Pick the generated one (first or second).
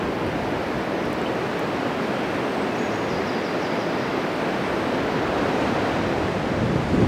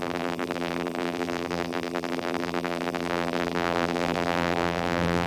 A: second